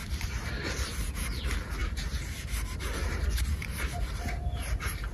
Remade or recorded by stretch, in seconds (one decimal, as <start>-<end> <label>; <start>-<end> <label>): 0.0-0.7 remade; 0.7-1.8 recorded; 1.8-5.1 remade